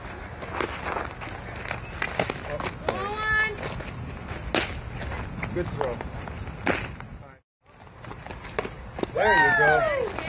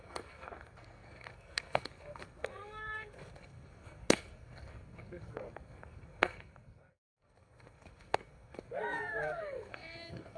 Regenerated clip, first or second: second